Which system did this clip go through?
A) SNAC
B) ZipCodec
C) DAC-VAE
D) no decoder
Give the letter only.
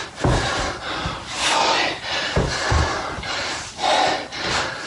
D